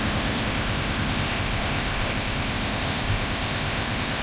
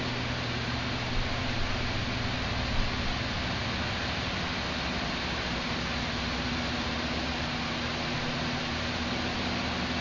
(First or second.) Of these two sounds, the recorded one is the second